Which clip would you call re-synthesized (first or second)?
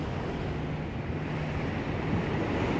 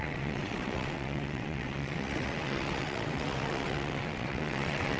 second